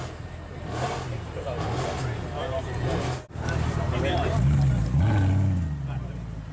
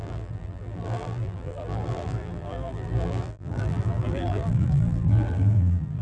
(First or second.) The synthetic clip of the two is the second